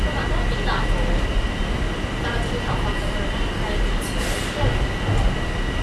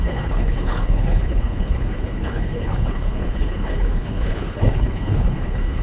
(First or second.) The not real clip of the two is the second